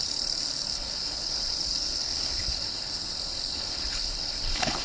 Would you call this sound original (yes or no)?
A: no